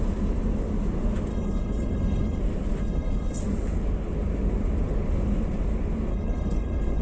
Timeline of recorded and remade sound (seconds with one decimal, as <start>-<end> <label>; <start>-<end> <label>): 0.0-1.3 recorded; 1.3-2.4 remade; 2.4-2.8 recorded; 2.8-3.4 remade; 3.4-6.1 recorded; 6.1-7.0 remade